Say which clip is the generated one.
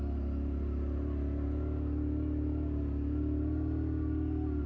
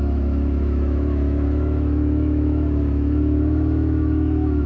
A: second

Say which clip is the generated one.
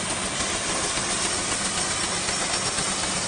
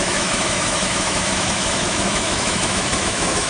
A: second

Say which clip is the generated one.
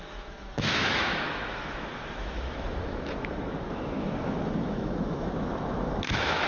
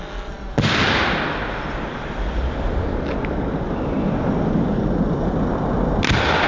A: first